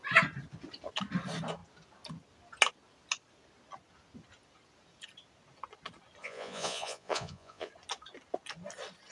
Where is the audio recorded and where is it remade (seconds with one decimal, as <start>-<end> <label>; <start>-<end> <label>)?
0.0-6.2 recorded; 6.2-7.7 remade; 7.7-9.1 recorded